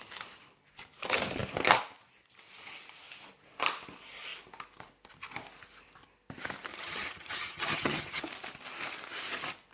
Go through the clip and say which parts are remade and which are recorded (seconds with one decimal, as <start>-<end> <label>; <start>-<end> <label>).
0.0-6.7 recorded; 6.7-8.2 remade; 8.2-9.7 recorded